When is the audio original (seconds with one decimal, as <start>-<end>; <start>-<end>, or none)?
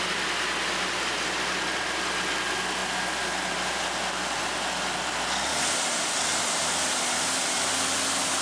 0.0-8.4